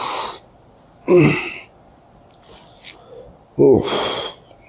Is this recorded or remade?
recorded